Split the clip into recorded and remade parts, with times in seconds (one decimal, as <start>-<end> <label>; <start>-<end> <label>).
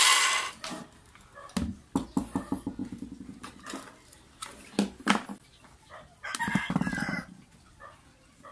0.0-2.8 recorded; 2.8-3.8 remade; 3.8-8.5 recorded